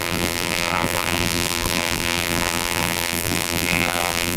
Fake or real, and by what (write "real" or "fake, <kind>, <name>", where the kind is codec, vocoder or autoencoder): fake, vocoder, BigVGAN v2